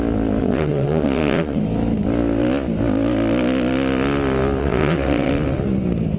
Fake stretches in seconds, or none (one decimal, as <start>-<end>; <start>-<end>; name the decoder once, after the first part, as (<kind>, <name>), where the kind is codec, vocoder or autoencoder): 0.4-1.6 (vocoder, WaveNeXt); 4.6-5.3